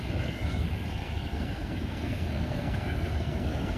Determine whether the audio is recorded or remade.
remade